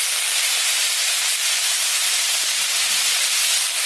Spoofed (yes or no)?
no